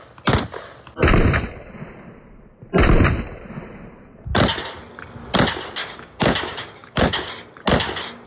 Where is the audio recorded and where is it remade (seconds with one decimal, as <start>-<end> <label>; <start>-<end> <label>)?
0.0-5.8 recorded; 5.8-7.3 remade; 7.3-8.3 recorded